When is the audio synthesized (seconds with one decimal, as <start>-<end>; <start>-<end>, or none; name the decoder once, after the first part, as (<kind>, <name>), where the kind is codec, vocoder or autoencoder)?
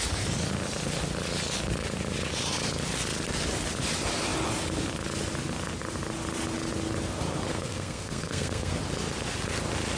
7.5-8.7 (codec, SNAC)